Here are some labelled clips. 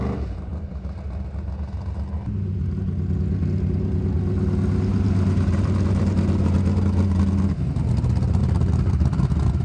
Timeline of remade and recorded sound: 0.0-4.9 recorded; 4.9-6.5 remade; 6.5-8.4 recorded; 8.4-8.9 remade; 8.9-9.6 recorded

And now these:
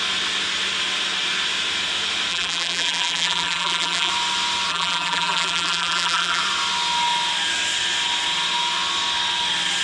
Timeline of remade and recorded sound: 0.0-2.3 recorded; 2.3-4.1 remade; 4.1-4.7 recorded; 4.7-6.4 remade; 6.4-9.8 recorded

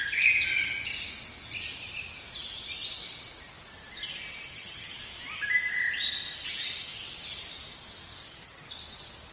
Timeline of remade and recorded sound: 0.0-4.5 recorded; 4.5-5.0 remade; 5.0-8.2 recorded; 8.2-8.7 remade; 8.7-9.3 recorded